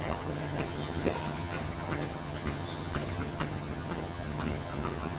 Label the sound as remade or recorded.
remade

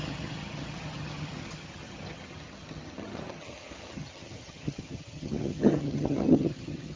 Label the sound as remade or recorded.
remade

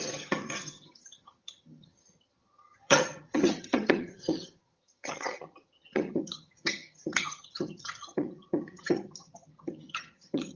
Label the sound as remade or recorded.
remade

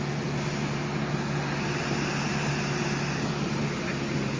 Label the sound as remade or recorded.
recorded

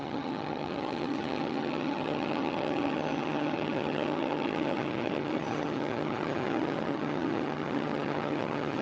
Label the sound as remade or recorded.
remade